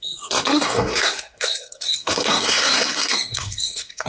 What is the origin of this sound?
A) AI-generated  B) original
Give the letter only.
A